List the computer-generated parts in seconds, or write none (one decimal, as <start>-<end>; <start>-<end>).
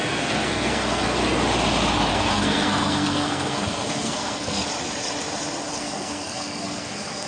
0.0-1.2; 2.1-4.6; 5.8-7.3